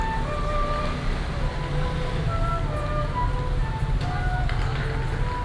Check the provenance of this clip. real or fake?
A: real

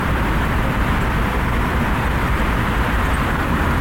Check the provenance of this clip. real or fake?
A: real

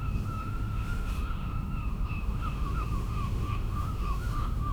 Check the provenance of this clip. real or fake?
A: fake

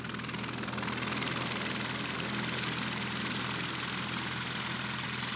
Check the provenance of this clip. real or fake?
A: real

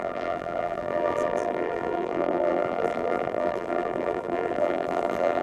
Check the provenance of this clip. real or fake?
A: fake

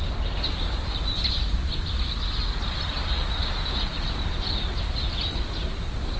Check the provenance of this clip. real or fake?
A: real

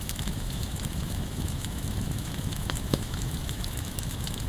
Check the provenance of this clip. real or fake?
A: fake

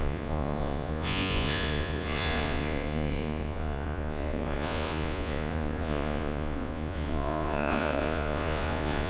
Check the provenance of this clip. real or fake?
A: fake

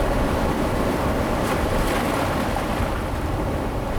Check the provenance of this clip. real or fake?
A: real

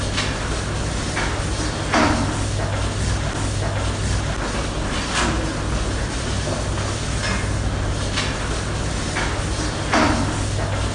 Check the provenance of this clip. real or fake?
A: real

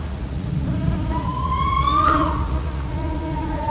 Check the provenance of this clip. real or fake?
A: fake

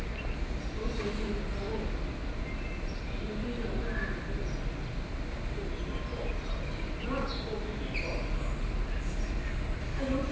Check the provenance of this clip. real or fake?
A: real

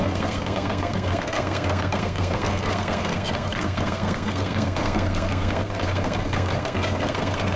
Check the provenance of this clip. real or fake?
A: fake